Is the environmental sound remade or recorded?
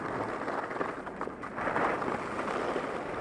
recorded